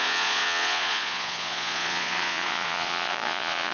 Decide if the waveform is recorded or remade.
remade